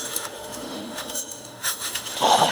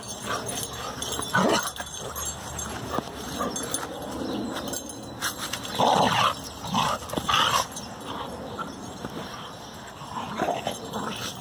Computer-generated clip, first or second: first